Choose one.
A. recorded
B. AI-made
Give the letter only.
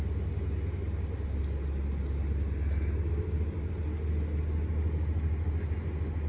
A